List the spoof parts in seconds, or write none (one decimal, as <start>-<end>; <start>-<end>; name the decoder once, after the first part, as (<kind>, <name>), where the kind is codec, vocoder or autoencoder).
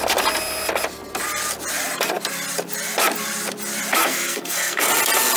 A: 4.0-4.9 (codec, SNAC)